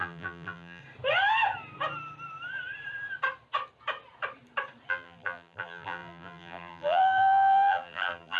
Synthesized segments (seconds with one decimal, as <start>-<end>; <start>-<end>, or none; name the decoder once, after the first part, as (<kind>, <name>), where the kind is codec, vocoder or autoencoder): 0.0-0.8 (vocoder, BigVGAN v2); 4.9-8.4